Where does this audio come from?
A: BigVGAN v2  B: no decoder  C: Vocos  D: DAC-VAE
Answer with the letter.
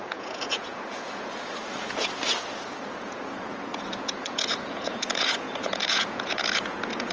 C